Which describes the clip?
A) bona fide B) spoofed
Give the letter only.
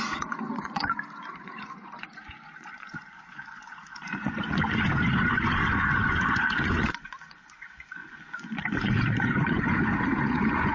B